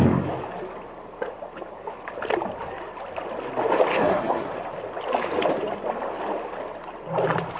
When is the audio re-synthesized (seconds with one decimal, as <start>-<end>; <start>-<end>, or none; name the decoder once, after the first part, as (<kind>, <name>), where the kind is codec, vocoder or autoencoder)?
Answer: 4.0-4.5 (codec, SNAC)